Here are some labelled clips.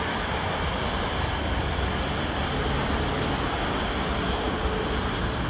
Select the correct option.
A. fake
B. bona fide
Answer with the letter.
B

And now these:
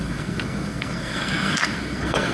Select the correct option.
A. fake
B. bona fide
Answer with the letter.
A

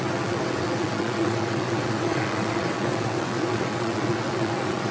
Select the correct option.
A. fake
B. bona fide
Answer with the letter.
A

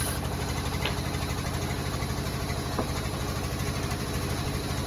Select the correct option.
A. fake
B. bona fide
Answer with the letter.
B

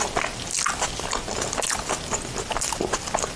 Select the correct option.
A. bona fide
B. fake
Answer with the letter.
A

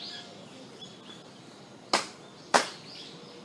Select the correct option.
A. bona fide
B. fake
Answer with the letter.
A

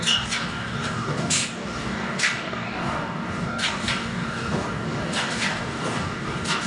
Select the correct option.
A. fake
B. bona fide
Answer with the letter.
A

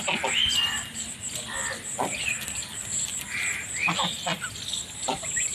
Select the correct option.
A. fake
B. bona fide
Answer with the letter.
A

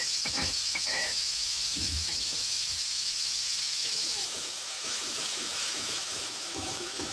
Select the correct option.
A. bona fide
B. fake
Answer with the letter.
B